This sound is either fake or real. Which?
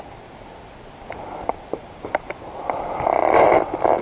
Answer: real